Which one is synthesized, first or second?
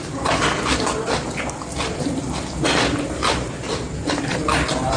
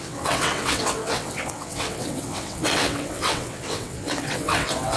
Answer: second